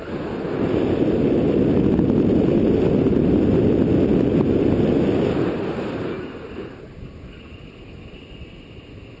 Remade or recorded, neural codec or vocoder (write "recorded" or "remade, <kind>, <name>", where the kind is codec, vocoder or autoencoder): recorded